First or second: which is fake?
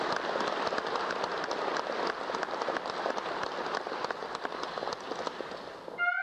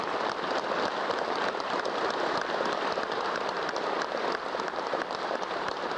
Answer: second